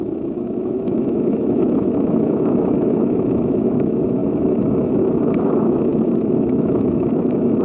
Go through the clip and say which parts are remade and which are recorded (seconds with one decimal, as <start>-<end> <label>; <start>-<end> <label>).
0.0-7.6 remade